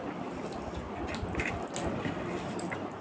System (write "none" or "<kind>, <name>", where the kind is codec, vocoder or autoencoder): none